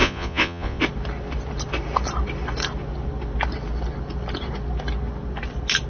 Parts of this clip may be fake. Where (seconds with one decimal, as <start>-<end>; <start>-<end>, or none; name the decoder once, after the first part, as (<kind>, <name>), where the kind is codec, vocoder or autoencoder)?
0.0-0.8 (vocoder, Vocos)